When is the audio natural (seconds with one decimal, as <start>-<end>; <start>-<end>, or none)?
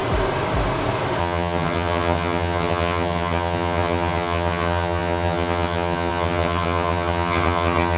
0.0-1.2